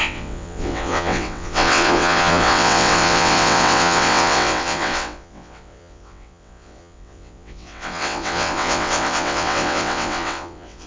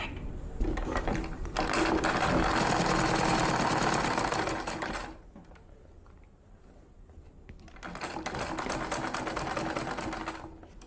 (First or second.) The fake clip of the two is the first